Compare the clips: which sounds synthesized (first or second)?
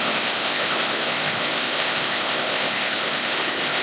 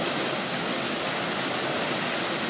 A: first